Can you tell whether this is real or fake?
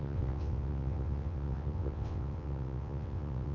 fake